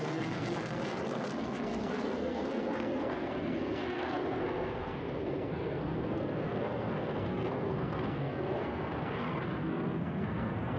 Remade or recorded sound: remade